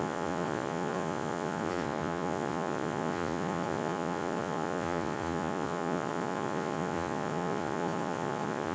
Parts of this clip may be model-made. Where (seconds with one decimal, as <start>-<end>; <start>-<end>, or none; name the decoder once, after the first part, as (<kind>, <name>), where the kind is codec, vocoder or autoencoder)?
0.0-8.7 (vocoder, Vocos)